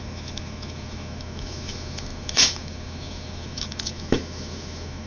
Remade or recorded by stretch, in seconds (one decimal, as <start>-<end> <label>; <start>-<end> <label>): 0.0-5.1 remade

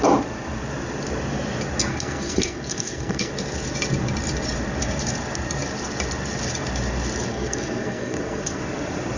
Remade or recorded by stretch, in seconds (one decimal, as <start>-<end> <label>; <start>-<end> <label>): 0.0-1.9 recorded; 1.9-3.3 remade; 3.3-7.3 recorded; 7.3-8.6 remade; 8.6-9.2 recorded

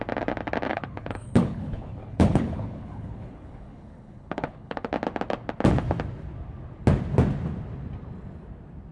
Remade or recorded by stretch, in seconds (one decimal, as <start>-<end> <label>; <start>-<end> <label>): 0.0-0.7 recorded; 0.7-4.9 remade; 4.9-8.9 recorded

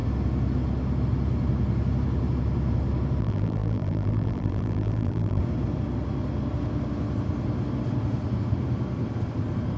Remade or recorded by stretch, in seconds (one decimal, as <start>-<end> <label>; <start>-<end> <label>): 0.0-3.2 recorded; 3.2-5.4 remade; 5.4-9.8 recorded

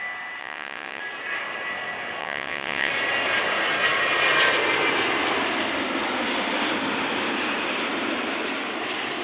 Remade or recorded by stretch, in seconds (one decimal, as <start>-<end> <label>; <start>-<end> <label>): 0.0-0.4 recorded; 0.4-1.0 remade; 1.0-2.2 recorded; 2.2-2.9 remade; 2.9-9.2 recorded

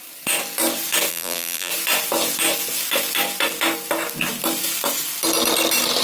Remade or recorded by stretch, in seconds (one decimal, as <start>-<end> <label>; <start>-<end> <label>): 0.0-1.1 recorded; 1.1-1.7 remade; 1.7-6.0 recorded

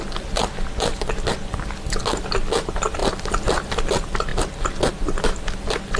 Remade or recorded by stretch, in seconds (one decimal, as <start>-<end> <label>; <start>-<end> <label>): 0.0-3.0 recorded; 3.0-3.9 remade; 3.9-4.3 recorded; 4.3-4.9 remade; 4.9-6.0 recorded